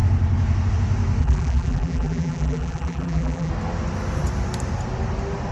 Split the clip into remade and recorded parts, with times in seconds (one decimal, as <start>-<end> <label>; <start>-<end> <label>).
0.0-1.2 recorded; 1.2-3.5 remade; 3.5-5.5 recorded